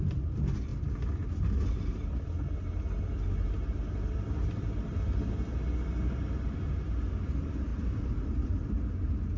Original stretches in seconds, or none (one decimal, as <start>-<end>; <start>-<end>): 0.0-7.7; 8.7-9.4